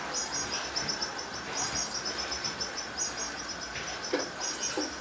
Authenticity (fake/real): real